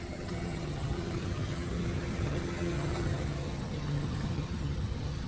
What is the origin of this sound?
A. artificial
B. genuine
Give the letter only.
A